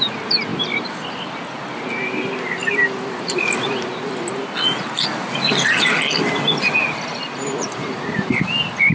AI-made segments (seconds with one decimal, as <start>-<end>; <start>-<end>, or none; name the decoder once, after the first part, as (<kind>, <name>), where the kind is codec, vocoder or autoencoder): none